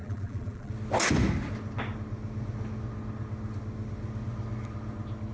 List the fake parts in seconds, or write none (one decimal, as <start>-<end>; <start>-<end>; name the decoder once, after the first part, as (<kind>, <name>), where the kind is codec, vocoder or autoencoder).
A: 0.0-0.7 (vocoder, BigVGAN v2)